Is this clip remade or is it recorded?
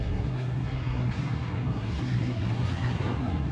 remade